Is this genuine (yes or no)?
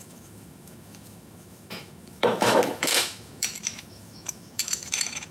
no